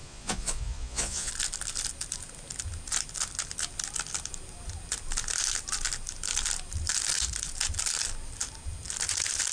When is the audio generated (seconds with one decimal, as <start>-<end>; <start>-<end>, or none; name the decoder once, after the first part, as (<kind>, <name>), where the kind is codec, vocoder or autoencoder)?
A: 0.0-1.3 (vocoder, Vocos)

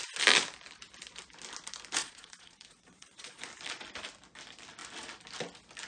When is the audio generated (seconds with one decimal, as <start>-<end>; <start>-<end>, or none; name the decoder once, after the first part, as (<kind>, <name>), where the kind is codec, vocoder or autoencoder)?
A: 2.0-3.4 (vocoder, Vocos)

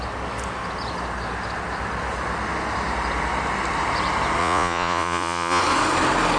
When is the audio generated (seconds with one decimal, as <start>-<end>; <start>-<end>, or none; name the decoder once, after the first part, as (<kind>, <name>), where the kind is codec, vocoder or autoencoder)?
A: 4.4-5.6 (vocoder, Vocos)